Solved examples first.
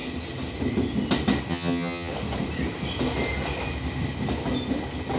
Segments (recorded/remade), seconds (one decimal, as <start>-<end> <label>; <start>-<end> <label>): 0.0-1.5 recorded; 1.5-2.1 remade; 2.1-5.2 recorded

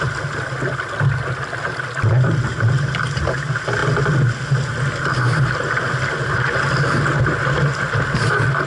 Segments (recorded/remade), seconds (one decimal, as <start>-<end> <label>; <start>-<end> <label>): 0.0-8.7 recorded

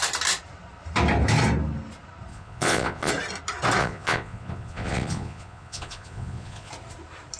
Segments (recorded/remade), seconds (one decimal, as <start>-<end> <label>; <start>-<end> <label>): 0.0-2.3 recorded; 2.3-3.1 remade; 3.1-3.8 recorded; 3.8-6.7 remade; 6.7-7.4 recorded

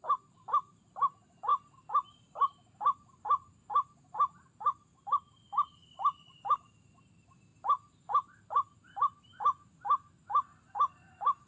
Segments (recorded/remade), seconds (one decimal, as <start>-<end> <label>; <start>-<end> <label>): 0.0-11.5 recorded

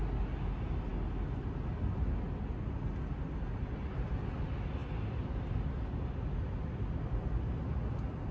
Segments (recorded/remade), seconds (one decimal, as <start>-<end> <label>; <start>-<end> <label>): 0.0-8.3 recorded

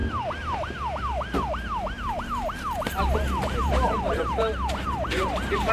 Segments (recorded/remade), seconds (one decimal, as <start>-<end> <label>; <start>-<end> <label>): 0.0-1.0 recorded; 1.0-5.7 remade

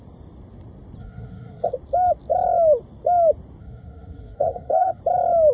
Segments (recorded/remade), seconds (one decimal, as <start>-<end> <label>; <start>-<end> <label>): 0.0-1.0 recorded; 1.0-1.7 remade; 1.7-3.6 recorded; 3.6-5.0 remade; 5.0-5.5 recorded